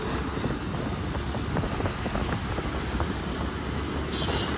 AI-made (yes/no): no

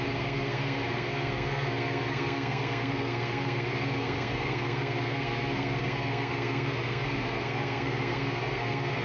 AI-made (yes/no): yes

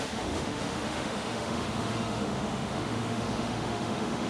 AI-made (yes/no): yes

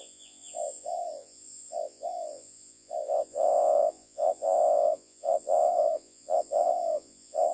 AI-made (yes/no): yes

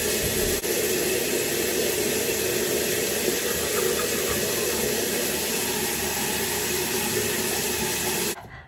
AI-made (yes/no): no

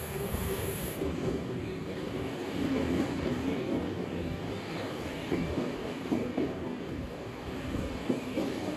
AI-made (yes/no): yes